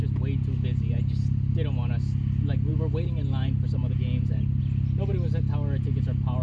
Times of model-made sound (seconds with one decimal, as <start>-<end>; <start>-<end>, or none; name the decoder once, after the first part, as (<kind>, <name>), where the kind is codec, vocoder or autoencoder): none

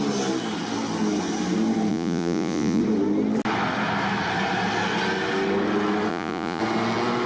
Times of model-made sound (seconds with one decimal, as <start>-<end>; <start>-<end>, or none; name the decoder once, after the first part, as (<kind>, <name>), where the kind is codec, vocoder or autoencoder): 1.9-2.8 (vocoder, Vocos); 6.1-6.6